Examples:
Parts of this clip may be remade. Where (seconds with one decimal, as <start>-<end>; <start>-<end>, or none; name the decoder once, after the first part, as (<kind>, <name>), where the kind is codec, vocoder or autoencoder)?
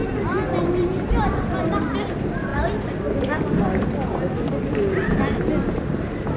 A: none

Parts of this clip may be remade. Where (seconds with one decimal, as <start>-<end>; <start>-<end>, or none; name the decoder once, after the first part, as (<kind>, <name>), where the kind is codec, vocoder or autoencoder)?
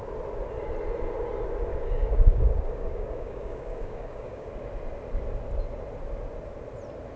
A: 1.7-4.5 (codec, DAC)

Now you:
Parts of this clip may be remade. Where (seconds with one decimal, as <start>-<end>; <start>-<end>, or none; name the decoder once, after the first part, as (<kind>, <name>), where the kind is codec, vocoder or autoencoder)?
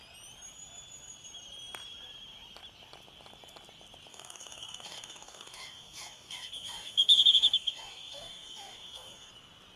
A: 4.1-9.3 (codec, DAC)